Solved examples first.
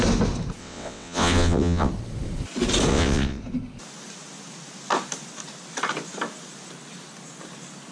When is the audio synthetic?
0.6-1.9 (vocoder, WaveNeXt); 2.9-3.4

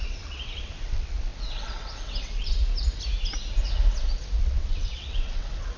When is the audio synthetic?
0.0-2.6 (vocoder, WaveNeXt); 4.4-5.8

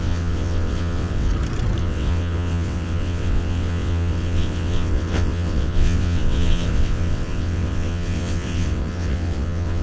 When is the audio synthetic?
0.0-1.3 (vocoder, WaveNeXt); 1.8-9.8

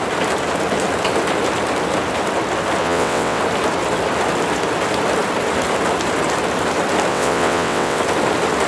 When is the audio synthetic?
2.8-3.4 (vocoder, WaveNeXt); 7.1-8.0

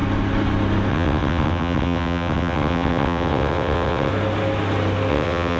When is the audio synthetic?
0.9-4.1 (vocoder, WaveNeXt); 5.1-5.6

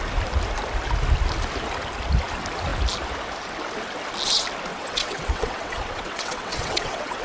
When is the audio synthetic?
4.7-7.2 (vocoder, WaveNeXt)